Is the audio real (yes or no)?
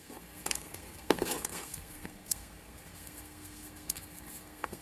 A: no